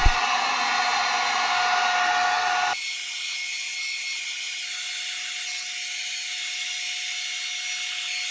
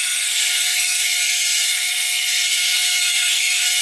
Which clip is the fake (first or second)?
second